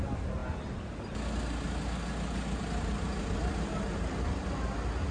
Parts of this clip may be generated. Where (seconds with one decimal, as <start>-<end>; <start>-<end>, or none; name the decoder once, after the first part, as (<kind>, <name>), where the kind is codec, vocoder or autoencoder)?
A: none